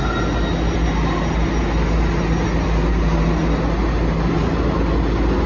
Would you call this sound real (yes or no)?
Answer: yes